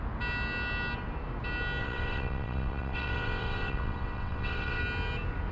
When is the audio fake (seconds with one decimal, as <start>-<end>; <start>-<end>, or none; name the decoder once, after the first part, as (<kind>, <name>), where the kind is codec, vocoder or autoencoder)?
1.8-4.8 (vocoder, WaveNeXt)